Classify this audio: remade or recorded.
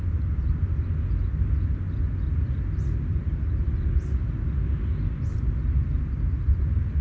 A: recorded